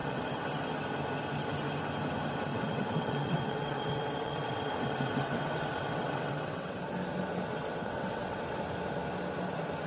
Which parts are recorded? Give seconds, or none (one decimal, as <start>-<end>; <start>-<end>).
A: 0.6-2.5; 6.8-7.5; 8.6-9.9